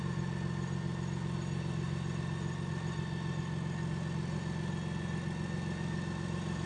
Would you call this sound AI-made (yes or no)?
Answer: no